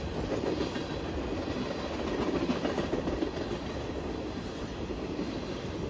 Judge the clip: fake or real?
real